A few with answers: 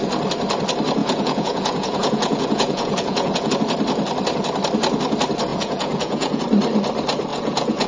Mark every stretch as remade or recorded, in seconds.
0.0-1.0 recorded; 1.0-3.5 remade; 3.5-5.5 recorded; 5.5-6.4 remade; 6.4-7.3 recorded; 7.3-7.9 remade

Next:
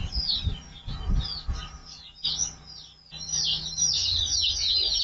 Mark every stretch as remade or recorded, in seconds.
0.0-4.3 recorded; 4.3-5.0 remade

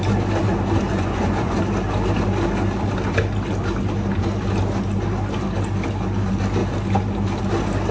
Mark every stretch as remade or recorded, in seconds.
0.0-0.9 recorded; 0.9-1.6 remade; 1.6-7.9 recorded

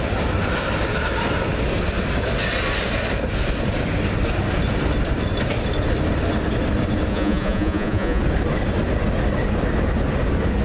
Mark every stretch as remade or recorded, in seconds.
0.0-7.1 recorded; 7.1-8.2 remade; 8.2-10.6 recorded

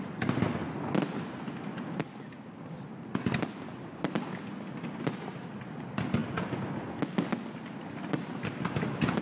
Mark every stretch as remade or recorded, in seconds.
0.0-9.2 recorded

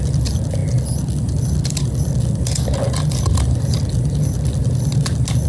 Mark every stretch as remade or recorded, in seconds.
0.0-5.5 recorded

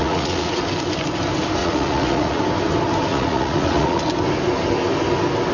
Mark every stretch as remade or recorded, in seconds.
0.0-0.6 remade; 0.6-1.6 recorded; 1.6-2.4 remade; 2.4-3.1 recorded; 3.1-4.0 remade; 4.0-5.5 recorded

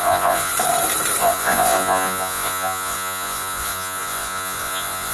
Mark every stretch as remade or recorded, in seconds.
0.0-0.5 remade; 0.5-1.2 recorded; 1.2-5.1 remade